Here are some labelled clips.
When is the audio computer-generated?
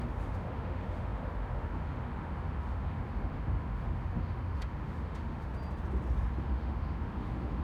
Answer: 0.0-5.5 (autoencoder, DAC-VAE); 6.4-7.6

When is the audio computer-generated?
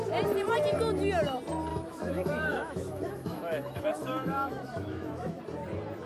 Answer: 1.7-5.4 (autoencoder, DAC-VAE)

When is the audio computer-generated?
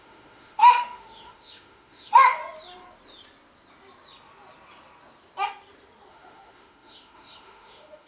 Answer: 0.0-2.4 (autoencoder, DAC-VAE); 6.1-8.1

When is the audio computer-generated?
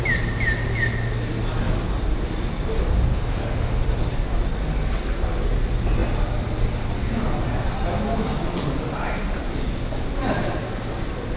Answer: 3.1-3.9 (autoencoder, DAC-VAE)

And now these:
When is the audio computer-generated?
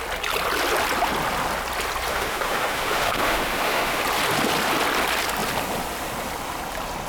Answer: 2.1-4.0 (autoencoder, DAC-VAE)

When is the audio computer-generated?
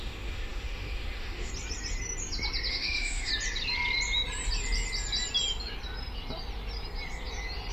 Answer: 0.0-1.5 (autoencoder, DAC-VAE); 2.7-3.3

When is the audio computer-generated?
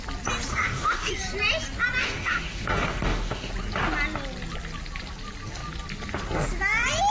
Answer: 0.5-1.1 (autoencoder, DAC-VAE); 2.0-3.5